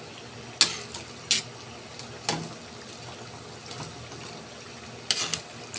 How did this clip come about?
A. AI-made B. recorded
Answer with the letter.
B